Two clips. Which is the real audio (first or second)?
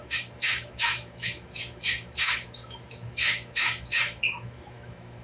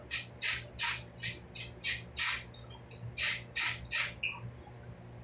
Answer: second